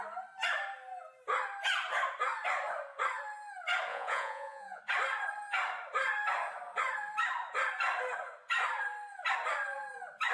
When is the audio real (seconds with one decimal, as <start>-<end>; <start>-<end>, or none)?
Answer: 0.0-3.9; 4.8-10.3